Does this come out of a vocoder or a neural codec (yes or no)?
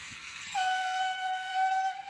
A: yes